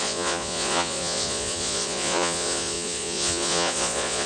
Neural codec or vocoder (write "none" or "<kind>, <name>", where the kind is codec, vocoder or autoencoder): vocoder, Vocos